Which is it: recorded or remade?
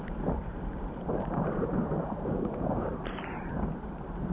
remade